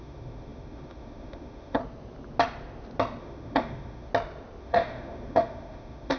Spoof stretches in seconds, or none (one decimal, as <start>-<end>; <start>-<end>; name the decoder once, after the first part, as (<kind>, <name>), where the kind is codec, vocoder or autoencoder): 0.0-1.8 (autoencoder, DAC-VAE); 3.2-4.1; 4.6-6.2